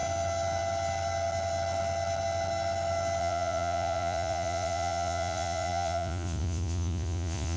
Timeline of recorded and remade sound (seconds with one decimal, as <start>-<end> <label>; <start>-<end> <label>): 0.0-3.2 recorded; 3.2-7.6 remade